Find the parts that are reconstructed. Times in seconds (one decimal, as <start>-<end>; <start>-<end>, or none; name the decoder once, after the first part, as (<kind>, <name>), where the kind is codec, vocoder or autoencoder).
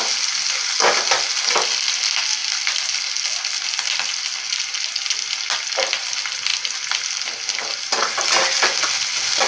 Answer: none